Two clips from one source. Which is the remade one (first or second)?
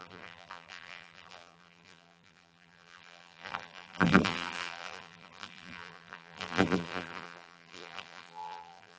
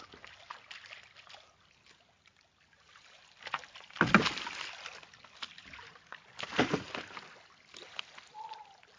first